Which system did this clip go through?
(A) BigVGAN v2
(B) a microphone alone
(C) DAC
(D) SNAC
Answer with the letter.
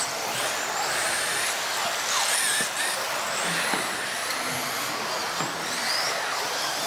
B